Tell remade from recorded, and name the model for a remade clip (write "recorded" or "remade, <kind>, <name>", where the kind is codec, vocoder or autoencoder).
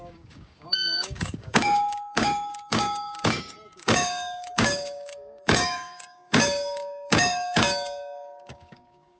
remade, codec, DAC